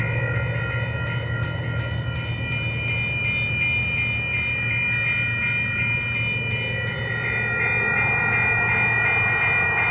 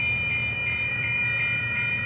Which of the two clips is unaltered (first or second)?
first